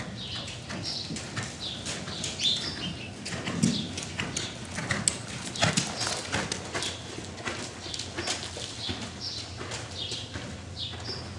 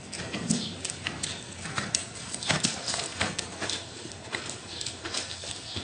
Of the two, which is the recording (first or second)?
first